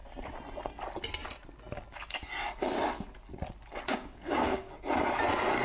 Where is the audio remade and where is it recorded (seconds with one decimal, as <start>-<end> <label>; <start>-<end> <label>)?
0.0-3.9 recorded; 3.9-4.7 remade; 4.7-5.6 recorded